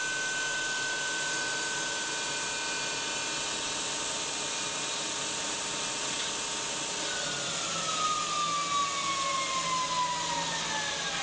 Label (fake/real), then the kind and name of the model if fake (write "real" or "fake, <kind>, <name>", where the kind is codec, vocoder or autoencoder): real